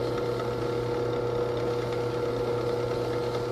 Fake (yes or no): no